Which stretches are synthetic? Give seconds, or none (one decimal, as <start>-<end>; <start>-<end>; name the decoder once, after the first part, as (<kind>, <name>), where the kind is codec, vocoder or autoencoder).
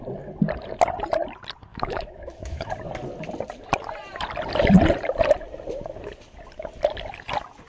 1.7-2.7 (autoencoder, DAC-VAE)